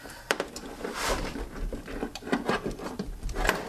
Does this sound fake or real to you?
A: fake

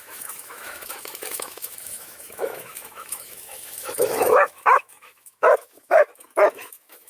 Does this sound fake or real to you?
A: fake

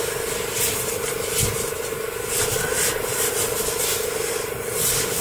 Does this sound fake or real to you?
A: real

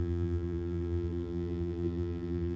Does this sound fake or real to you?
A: fake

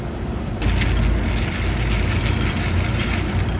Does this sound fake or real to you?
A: real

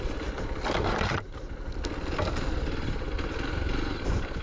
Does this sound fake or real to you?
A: real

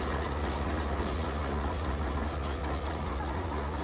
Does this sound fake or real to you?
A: fake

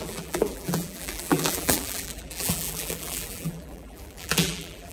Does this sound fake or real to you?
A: fake